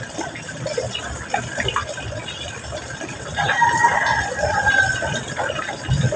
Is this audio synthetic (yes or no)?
no